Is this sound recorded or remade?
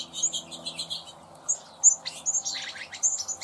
recorded